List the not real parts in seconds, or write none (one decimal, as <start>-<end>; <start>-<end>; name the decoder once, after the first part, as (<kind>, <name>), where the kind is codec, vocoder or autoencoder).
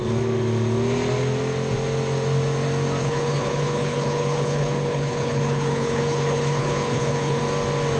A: 3.0-7.4 (codec, HILCodec)